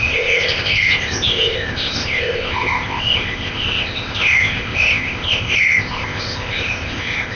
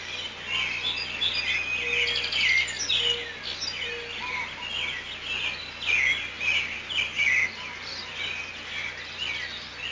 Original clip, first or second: second